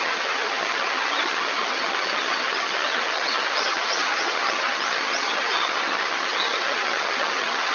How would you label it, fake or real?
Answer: fake